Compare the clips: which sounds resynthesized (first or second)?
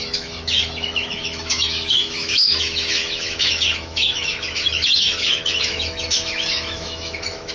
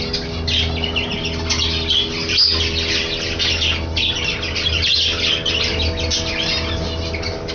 first